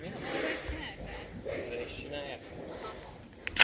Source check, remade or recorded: recorded